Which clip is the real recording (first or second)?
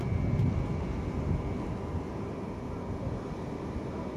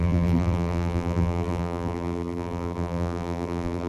first